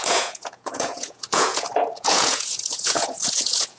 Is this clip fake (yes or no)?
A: yes